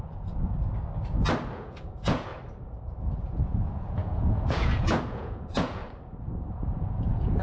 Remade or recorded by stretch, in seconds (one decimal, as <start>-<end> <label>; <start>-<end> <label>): 0.0-0.5 remade; 0.5-1.5 recorded; 1.5-2.3 remade; 2.3-3.1 recorded; 3.1-5.8 remade; 5.8-6.5 recorded; 6.5-7.4 remade